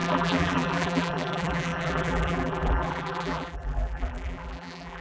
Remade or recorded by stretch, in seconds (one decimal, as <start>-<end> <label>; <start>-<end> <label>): 0.0-5.0 remade